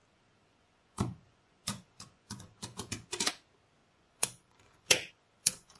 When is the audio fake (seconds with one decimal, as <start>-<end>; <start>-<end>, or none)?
0.0-3.3; 3.8-5.8